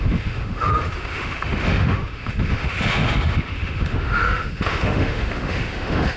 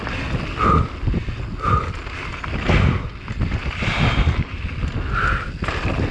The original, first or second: second